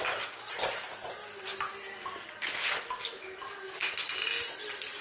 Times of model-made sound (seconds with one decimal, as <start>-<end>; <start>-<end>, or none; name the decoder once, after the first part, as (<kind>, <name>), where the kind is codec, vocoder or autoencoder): none